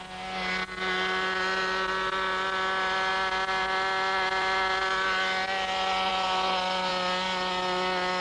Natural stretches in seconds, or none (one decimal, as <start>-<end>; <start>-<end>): 0.0-8.2

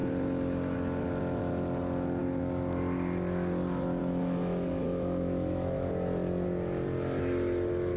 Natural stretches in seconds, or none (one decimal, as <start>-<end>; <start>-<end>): 0.0-4.0; 5.9-8.0

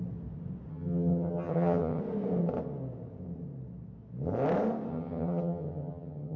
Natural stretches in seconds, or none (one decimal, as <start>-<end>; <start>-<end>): 0.0-0.7; 2.0-4.9